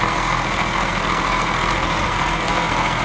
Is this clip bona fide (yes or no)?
no